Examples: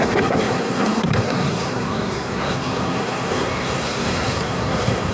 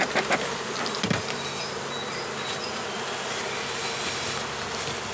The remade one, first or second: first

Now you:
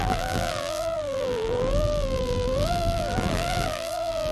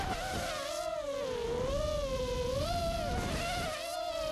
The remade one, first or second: first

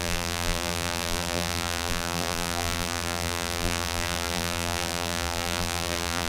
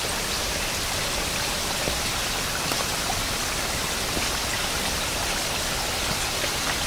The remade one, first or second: first